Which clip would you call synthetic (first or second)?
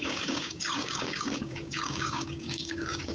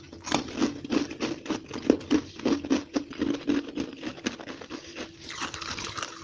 first